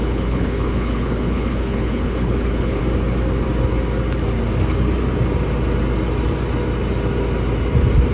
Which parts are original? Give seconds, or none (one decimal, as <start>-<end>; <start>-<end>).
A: 2.8-8.1